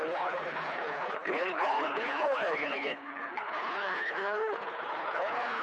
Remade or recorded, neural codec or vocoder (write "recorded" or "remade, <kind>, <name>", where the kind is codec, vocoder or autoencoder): remade, codec, HILCodec